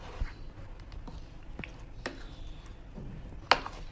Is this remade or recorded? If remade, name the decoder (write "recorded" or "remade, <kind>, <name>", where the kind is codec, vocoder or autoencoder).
recorded